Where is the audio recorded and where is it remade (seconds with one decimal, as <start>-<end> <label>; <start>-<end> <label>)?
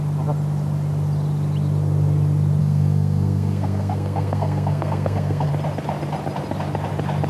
0.0-2.6 recorded; 2.6-5.5 remade; 5.5-7.3 recorded